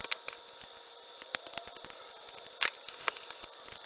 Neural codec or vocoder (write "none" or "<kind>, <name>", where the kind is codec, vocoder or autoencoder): none